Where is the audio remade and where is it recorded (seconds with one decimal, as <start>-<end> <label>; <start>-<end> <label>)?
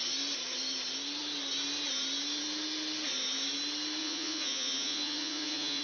0.0-4.0 recorded; 4.0-5.8 remade